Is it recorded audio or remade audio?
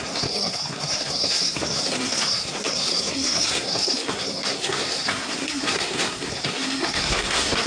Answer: remade